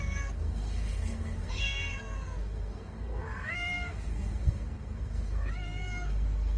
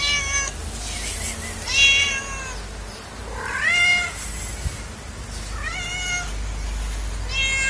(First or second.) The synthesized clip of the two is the first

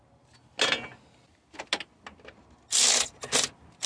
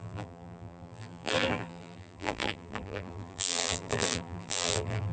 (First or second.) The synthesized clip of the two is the second